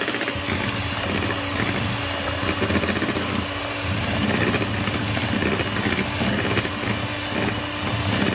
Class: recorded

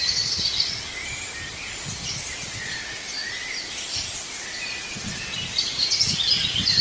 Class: remade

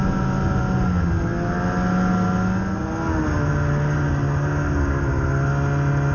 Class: recorded